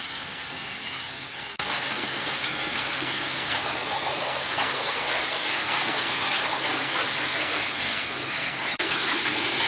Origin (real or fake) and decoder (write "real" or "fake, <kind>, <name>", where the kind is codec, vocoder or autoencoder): fake, codec, SNAC